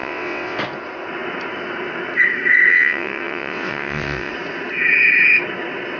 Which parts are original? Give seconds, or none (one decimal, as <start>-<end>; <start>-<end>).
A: 0.6-2.7; 4.3-6.0